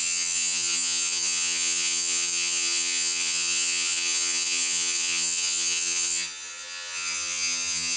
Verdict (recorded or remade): remade